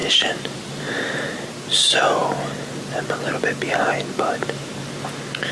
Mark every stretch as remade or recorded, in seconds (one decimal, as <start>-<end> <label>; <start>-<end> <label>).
0.0-0.9 remade; 0.9-5.5 recorded